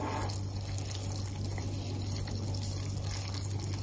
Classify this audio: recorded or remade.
recorded